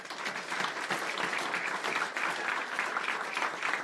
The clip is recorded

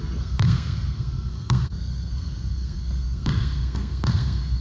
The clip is remade